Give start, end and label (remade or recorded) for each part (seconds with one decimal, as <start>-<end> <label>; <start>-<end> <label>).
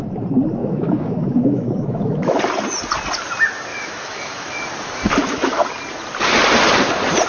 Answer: 0.0-0.6 recorded; 0.6-2.4 remade; 2.4-3.7 recorded; 3.7-4.6 remade; 4.6-5.2 recorded; 5.2-5.7 remade; 5.7-7.3 recorded